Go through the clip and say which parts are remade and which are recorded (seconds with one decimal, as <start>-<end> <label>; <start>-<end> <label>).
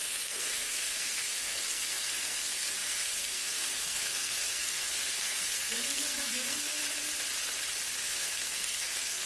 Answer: 0.0-6.8 remade; 6.8-8.0 recorded; 8.0-9.3 remade